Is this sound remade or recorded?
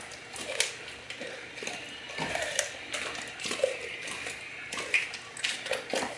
recorded